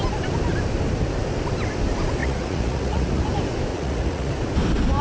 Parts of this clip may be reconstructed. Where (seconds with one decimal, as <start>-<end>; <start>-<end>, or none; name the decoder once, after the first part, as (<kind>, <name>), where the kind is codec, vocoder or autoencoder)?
2.2-3.2 (vocoder, Vocos); 3.7-4.3